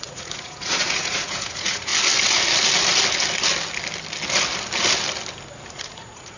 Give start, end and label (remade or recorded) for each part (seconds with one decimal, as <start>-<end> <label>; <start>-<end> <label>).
0.0-1.9 remade; 1.9-5.7 recorded; 5.7-6.4 remade